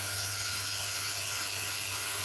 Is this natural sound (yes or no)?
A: no